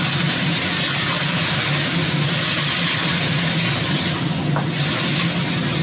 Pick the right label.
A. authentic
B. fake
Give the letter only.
A